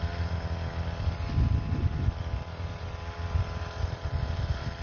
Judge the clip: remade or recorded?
recorded